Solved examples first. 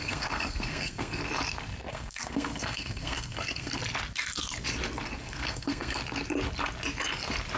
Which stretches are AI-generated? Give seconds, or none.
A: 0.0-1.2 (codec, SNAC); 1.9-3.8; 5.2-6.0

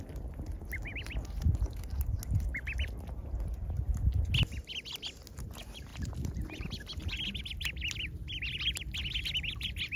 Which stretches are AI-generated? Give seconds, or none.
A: none

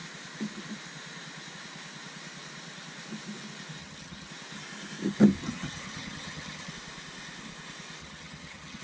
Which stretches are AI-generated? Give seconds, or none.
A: 3.8-4.3 (vocoder, HiFi-GAN); 5.4-6.7; 8.0-8.8

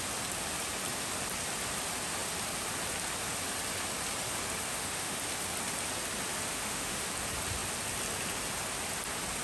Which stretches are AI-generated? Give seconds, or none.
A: 4.7-5.2 (autoencoder, DAC-VAE); 6.5-7.1

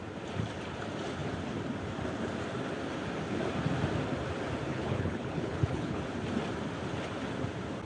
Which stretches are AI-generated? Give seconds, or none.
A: 4.7-6.0 (codec, HILCodec)

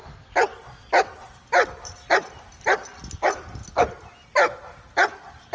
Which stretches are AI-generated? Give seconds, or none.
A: none